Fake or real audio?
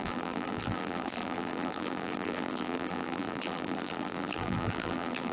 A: fake